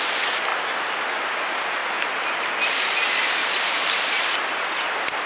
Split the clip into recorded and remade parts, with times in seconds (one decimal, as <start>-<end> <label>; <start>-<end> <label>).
0.0-0.5 remade; 0.5-1.2 recorded; 1.2-1.8 remade; 1.8-3.9 recorded; 3.9-5.3 remade